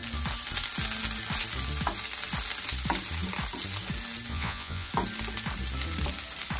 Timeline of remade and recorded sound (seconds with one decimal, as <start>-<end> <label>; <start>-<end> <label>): 0.0-4.3 recorded; 4.3-4.9 remade; 4.9-6.6 recorded